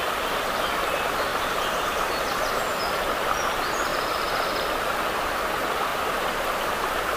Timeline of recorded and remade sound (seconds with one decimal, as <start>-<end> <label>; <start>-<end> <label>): 0.0-1.3 recorded; 1.3-2.2 remade; 2.2-3.9 recorded; 3.9-4.6 remade; 4.6-5.9 recorded; 5.9-6.7 remade; 6.7-7.2 recorded